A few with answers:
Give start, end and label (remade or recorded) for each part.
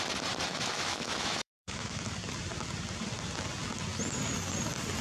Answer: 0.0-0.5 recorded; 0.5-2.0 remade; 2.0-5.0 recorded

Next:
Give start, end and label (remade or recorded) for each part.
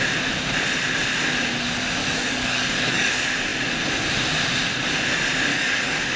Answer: 0.0-2.0 recorded; 2.0-3.1 remade; 3.1-5.5 recorded; 5.5-6.2 remade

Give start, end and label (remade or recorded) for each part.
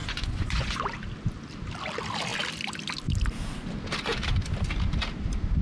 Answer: 0.0-0.8 remade; 0.8-5.6 recorded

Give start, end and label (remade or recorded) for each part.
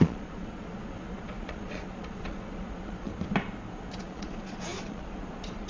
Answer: 0.0-3.1 remade; 3.1-3.9 recorded; 3.9-5.7 remade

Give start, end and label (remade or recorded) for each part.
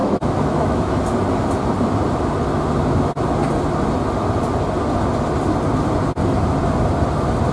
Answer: 0.0-0.9 remade; 0.9-7.5 recorded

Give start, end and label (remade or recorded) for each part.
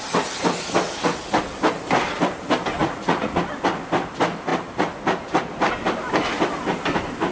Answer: 0.0-2.8 recorded; 2.8-3.4 remade; 3.4-7.3 recorded